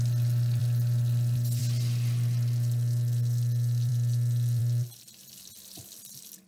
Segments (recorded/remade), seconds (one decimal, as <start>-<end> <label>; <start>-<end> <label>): 0.0-6.5 recorded